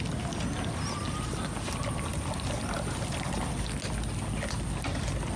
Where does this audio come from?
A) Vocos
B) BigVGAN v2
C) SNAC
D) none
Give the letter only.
D